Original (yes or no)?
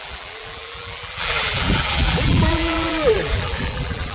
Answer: no